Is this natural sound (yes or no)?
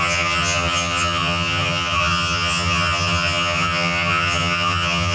no